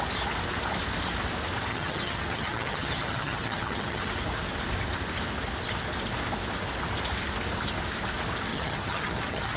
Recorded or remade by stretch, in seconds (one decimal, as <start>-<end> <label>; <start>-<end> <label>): 0.0-1.7 recorded; 1.7-4.1 remade; 4.1-8.5 recorded; 8.5-9.6 remade